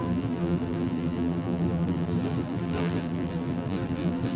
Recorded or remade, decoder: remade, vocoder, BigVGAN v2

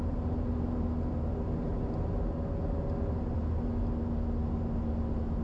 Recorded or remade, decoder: recorded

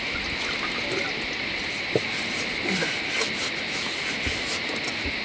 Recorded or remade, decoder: recorded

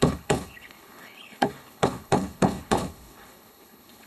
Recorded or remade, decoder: remade, codec, HILCodec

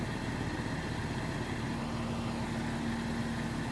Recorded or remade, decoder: recorded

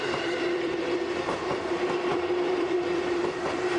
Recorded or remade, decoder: remade, vocoder, BigVGAN v2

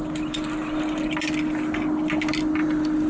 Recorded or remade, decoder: recorded